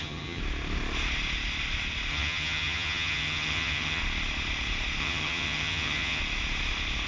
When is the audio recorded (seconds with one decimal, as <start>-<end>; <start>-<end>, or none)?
0.4-2.1; 4.0-5.0; 6.2-7.1